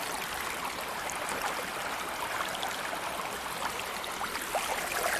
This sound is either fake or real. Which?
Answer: fake